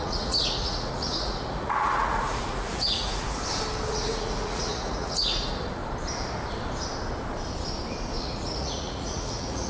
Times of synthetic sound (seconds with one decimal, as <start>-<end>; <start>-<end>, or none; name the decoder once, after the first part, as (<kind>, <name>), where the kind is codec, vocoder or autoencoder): 0.0-3.4 (vocoder, Vocos); 3.9-5.8; 8.2-9.7